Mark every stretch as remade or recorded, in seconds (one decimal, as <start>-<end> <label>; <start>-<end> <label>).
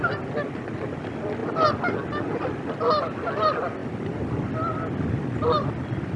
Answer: 0.0-6.2 recorded